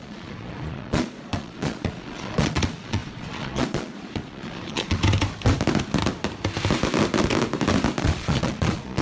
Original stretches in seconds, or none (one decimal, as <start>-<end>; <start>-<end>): 5.0-8.0